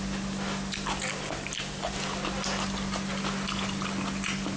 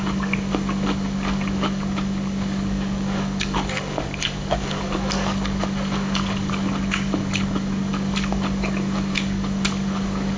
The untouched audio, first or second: first